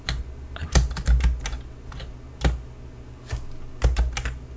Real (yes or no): yes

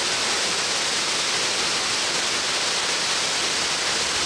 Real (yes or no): yes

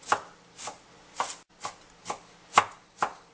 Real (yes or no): yes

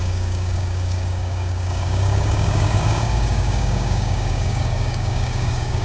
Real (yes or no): no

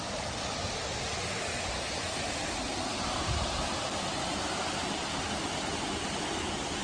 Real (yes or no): yes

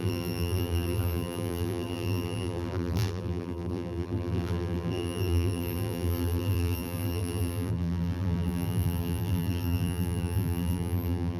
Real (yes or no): no